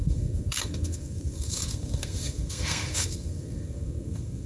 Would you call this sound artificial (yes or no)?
yes